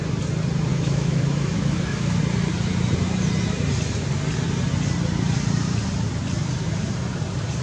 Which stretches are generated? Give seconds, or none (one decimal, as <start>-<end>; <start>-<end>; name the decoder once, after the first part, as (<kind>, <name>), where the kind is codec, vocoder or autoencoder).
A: 0.7-2.2 (autoencoder, DAC-VAE)